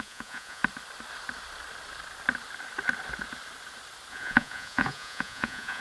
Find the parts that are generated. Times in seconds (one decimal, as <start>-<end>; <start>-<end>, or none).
0.0-0.6; 4.1-5.8